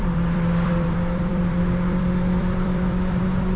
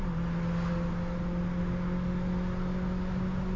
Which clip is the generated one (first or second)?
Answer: first